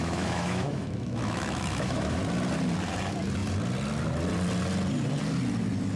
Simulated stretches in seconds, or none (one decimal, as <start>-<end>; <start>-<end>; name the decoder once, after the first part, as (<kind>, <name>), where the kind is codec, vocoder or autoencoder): 0.0-2.2 (autoencoder, DAC-VAE)